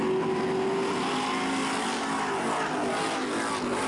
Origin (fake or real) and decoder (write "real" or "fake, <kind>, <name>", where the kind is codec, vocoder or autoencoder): real